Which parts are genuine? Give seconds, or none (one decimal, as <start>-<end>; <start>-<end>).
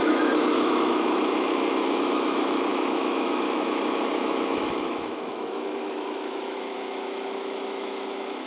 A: none